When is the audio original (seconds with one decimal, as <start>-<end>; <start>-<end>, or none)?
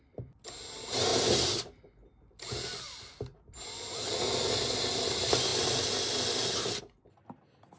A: 0.0-7.8